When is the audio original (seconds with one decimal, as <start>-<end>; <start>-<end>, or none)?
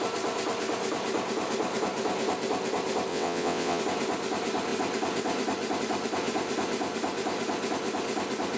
0.0-3.1; 3.8-8.6